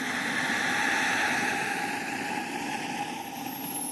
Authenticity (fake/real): real